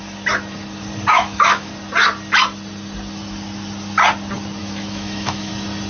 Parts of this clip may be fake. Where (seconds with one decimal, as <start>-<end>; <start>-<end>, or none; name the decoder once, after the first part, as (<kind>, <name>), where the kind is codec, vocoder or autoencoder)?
1.1-1.7 (autoencoder, DAC-VAE); 4.6-5.5